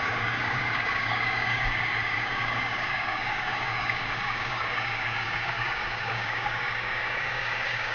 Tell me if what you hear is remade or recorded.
remade